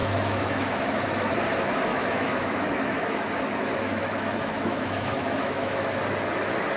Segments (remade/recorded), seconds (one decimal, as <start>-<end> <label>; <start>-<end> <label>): 0.0-1.3 remade; 1.3-1.9 recorded; 1.9-6.0 remade; 6.0-6.8 recorded